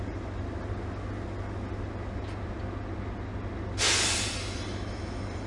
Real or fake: real